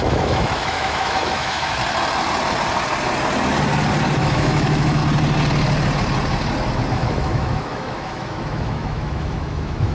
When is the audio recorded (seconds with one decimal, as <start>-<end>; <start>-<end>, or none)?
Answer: 1.8-4.2; 5.0-6.9